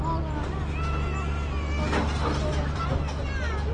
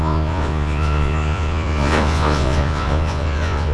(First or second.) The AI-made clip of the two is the second